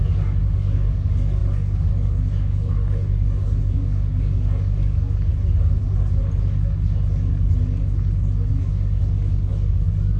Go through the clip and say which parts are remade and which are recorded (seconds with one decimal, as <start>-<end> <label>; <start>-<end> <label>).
0.0-5.3 remade; 5.3-8.5 recorded; 8.5-10.2 remade